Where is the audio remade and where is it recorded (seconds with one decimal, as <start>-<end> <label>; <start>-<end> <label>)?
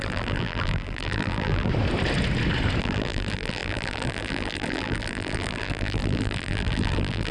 0.0-1.7 remade; 1.7-2.8 recorded; 2.8-7.3 remade